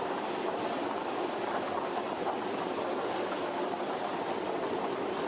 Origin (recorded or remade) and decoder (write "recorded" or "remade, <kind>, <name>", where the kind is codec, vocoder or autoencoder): recorded